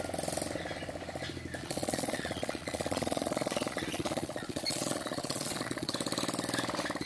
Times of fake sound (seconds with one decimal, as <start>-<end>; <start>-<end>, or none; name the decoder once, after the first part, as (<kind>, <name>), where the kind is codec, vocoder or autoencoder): 1.6-5.9 (vocoder, Vocos)